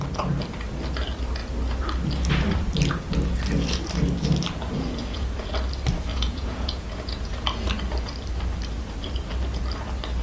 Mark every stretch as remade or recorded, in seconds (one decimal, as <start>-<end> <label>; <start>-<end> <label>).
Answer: 0.0-5.0 recorded; 5.0-5.5 remade; 5.5-6.1 recorded; 6.1-7.3 remade; 7.3-10.2 recorded